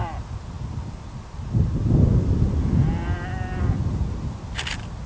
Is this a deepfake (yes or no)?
no